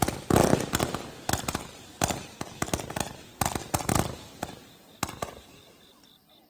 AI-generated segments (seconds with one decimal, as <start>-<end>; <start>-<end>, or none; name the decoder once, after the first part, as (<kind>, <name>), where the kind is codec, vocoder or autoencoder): none